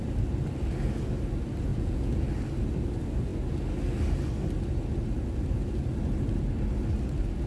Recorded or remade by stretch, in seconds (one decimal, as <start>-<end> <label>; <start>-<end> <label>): 0.0-1.7 recorded; 1.7-2.3 remade; 2.3-7.5 recorded